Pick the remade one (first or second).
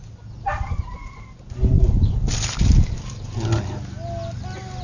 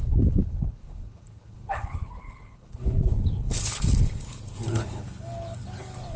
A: second